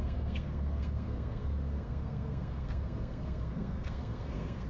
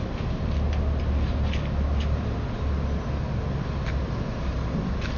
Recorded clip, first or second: second